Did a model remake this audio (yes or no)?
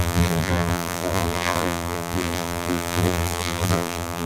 yes